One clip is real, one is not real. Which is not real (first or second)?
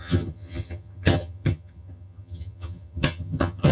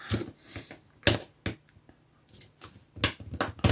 first